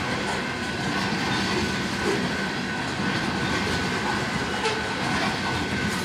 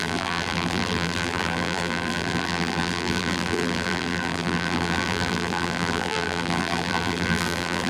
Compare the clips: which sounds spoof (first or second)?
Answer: second